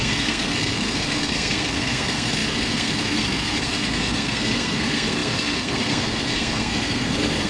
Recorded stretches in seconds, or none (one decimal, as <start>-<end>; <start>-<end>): none

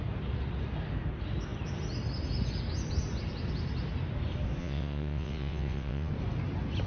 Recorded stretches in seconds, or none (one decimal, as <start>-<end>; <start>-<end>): 0.0-4.6; 6.1-6.9

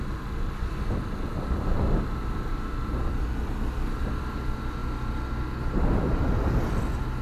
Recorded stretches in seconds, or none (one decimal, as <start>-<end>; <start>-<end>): 0.0-7.2

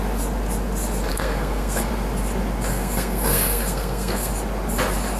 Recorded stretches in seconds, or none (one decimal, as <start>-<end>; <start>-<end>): 0.0-1.1; 1.9-2.7; 4.3-5.2

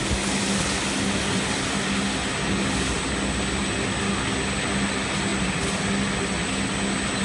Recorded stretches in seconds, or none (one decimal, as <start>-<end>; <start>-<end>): 0.0-7.2

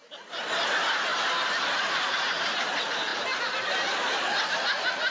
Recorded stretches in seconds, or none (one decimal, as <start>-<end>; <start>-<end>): 0.0-5.1